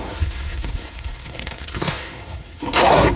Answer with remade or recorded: remade